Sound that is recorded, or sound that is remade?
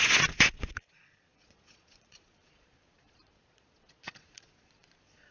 remade